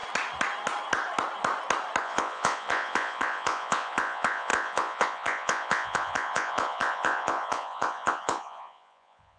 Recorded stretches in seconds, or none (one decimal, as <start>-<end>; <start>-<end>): 0.0-2.0

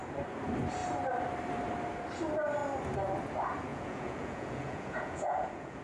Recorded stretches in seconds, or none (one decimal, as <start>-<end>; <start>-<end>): 0.0-3.7

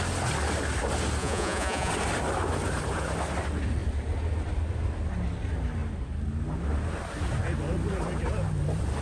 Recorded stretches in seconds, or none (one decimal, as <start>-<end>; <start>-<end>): 0.0-1.2; 1.9-9.0

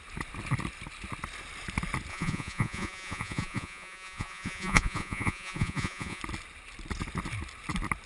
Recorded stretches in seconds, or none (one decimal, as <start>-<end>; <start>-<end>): 0.0-2.1; 6.2-8.1